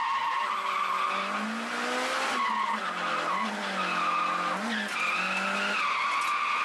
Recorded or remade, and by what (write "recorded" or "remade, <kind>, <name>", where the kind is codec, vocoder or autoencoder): recorded